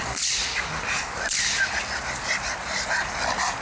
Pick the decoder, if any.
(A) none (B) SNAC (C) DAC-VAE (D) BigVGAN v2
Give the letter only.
A